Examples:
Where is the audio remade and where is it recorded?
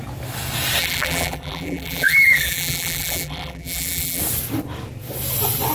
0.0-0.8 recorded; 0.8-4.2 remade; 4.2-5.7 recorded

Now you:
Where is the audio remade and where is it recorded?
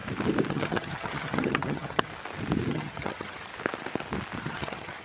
0.0-0.5 recorded; 0.5-2.1 remade; 2.1-2.7 recorded; 2.7-3.5 remade; 3.5-4.4 recorded; 4.4-5.0 remade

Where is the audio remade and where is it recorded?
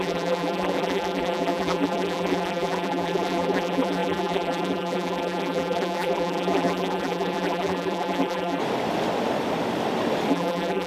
0.0-8.6 remade; 8.6-10.3 recorded; 10.3-10.9 remade